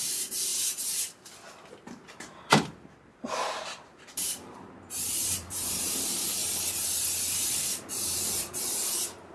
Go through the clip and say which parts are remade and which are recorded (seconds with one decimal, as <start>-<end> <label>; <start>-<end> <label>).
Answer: 0.0-0.5 remade; 0.5-1.7 recorded; 1.7-6.4 remade; 6.4-7.3 recorded; 7.3-9.3 remade

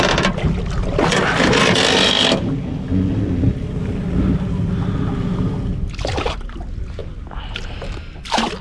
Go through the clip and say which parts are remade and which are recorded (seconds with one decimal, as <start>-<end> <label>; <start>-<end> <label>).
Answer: 0.0-8.6 recorded

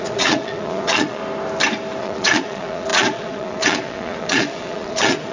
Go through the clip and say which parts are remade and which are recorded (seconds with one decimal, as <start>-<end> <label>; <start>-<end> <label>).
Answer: 0.0-1.2 remade; 1.2-2.0 recorded; 2.0-5.3 remade

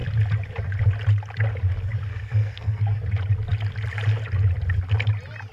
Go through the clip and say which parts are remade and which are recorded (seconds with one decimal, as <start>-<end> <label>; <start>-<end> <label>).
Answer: 0.0-2.1 recorded; 2.1-2.8 remade; 2.8-5.5 recorded

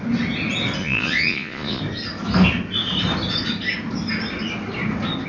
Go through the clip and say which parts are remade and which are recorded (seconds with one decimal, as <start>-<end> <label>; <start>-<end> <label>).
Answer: 0.0-0.8 recorded; 0.8-1.8 remade; 1.8-5.3 recorded